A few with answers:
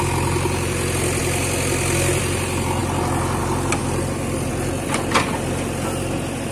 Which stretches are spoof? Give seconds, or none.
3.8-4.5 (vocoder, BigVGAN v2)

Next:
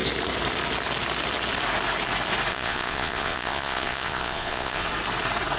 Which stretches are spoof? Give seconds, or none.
2.5-4.9 (vocoder, Vocos)